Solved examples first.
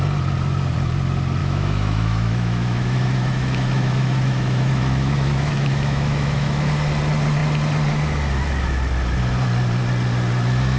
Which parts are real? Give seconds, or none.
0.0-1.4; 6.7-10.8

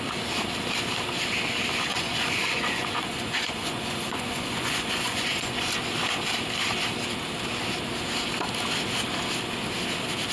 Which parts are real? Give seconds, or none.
0.0-1.9; 5.7-10.3

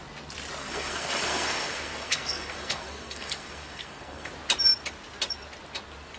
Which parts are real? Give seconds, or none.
0.0-0.6; 4.3-6.2

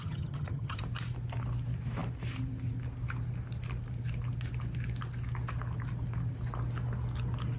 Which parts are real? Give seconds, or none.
0.8-7.6

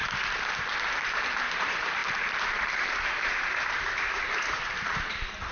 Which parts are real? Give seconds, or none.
0.0-1.0